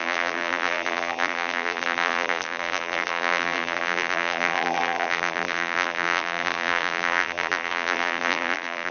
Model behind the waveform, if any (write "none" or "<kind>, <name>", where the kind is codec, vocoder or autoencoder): vocoder, BigVGAN v2